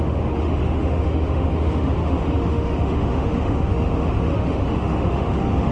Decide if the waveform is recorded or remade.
remade